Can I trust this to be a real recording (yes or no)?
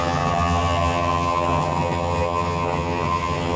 no